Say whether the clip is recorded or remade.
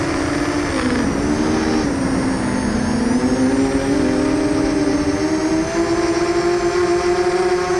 recorded